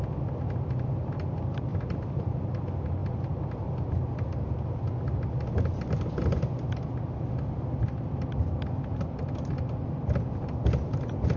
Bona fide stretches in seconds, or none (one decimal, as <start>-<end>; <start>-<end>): 0.0-1.7; 2.4-11.4